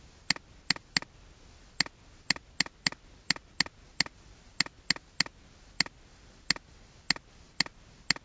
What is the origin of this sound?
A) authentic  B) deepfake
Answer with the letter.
A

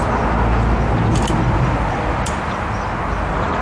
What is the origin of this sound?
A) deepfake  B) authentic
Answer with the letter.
B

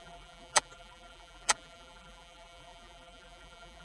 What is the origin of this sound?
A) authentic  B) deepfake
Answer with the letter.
B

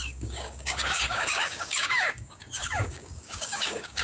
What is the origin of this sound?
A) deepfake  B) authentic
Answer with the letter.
A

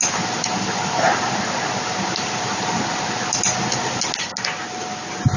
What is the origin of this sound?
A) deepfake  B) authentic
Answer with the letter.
B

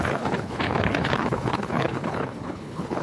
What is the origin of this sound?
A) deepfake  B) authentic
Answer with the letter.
A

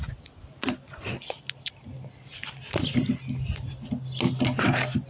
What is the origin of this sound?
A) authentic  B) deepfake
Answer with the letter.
A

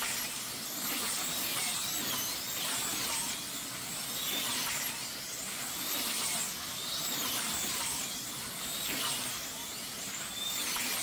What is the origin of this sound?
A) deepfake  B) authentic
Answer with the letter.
B